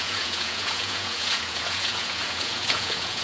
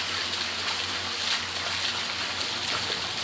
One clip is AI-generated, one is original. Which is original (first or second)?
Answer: second